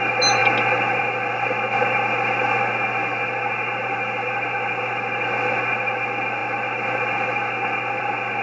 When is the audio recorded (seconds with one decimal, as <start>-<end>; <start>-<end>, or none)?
0.0-8.4